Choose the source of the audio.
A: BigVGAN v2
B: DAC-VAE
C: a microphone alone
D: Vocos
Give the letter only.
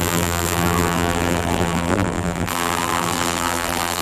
A